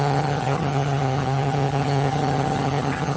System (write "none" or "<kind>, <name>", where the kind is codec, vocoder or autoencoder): vocoder, HiFi-GAN